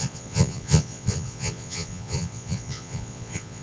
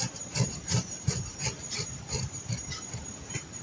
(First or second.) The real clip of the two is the second